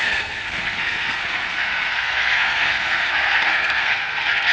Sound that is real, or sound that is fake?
fake